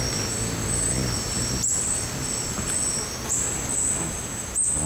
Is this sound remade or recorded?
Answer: recorded